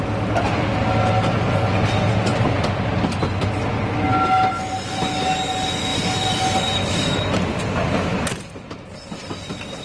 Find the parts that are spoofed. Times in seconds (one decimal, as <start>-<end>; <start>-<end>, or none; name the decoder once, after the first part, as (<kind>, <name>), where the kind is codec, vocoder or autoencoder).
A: 2.3-3.7 (vocoder, BigVGAN v2); 5.9-8.7